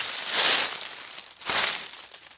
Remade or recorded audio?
recorded